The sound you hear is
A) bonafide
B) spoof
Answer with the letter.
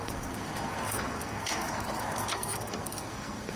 B